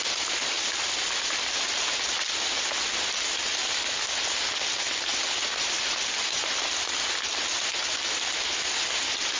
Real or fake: real